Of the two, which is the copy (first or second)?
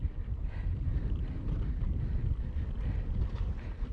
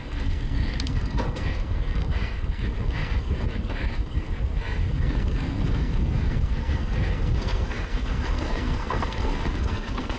second